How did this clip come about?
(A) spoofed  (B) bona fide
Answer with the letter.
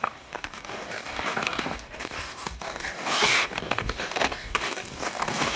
A